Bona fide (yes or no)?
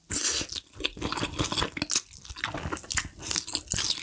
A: yes